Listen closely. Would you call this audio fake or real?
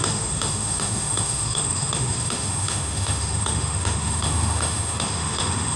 fake